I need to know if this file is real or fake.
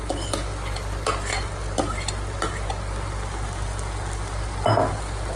real